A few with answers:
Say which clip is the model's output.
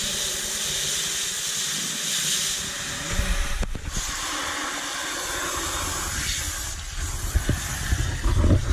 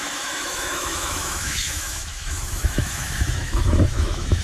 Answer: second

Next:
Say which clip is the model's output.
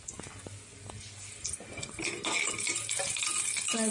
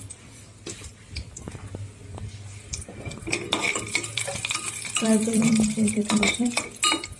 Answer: second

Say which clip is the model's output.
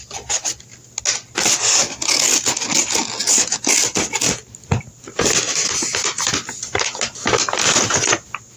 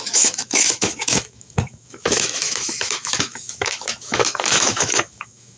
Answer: second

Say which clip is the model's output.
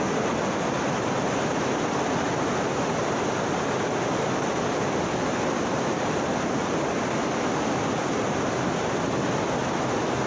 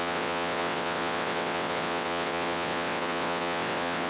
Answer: second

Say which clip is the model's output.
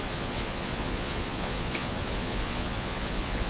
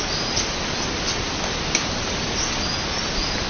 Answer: first